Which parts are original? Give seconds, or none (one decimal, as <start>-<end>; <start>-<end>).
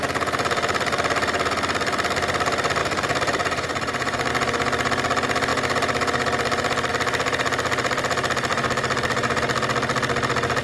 0.0-2.8; 4.3-8.5; 9.4-10.6